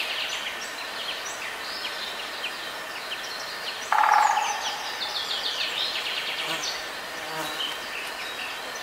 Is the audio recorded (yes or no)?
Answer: yes